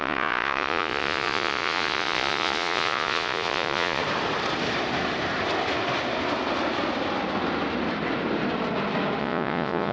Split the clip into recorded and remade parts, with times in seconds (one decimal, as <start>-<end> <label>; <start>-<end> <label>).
0.0-4.0 remade; 4.0-9.2 recorded; 9.2-9.9 remade